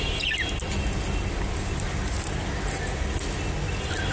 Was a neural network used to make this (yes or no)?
no